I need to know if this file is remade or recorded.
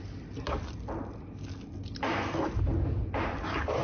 recorded